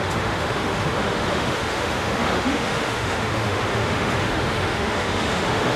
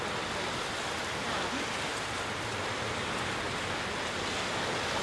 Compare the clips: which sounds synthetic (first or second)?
first